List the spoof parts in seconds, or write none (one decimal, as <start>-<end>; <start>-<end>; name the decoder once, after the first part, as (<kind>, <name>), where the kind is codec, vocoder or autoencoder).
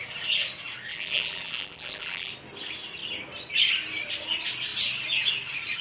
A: 0.9-2.3 (vocoder, BigVGAN v2)